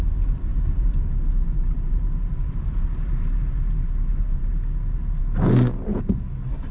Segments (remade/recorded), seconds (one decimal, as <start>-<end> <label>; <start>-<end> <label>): 0.0-0.5 recorded; 0.5-4.5 remade; 4.5-6.7 recorded